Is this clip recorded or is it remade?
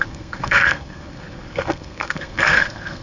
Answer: remade